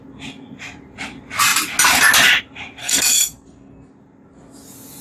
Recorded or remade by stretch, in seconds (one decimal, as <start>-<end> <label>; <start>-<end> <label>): 0.0-2.8 recorded; 2.8-3.9 remade; 3.9-5.0 recorded